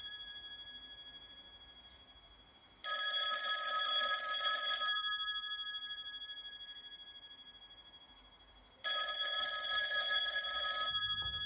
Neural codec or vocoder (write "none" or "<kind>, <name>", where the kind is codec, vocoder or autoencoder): vocoder, BigVGAN v2